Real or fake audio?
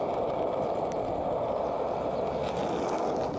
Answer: real